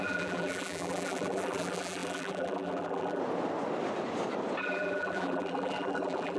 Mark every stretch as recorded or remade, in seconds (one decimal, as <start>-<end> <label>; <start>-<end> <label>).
0.0-3.2 remade; 3.2-4.6 recorded; 4.6-6.4 remade

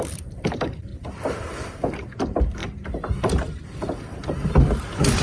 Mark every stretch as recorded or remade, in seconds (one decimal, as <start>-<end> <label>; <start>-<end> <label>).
0.0-5.2 remade

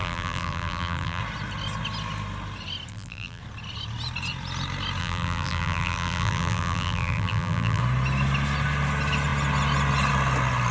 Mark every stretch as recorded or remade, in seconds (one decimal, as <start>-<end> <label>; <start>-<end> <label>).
0.0-1.2 remade; 1.2-2.9 recorded; 2.9-3.4 remade; 3.4-5.0 recorded; 5.0-7.8 remade; 7.8-10.7 recorded

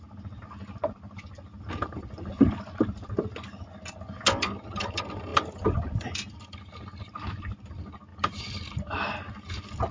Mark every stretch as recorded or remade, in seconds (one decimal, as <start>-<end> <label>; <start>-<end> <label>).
0.0-5.3 recorded; 5.3-6.7 remade; 6.7-8.1 recorded; 8.1-8.7 remade; 8.7-9.9 recorded

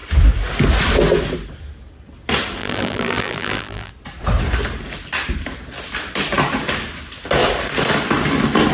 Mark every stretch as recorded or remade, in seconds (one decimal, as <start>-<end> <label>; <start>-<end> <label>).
0.0-2.6 recorded; 2.6-3.9 remade; 3.9-8.7 recorded

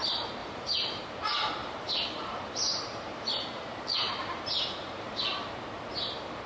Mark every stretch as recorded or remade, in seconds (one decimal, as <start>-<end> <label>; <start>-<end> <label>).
0.0-0.4 recorded; 0.4-1.0 remade; 1.0-1.6 recorded; 1.6-5.5 remade; 5.5-6.5 recorded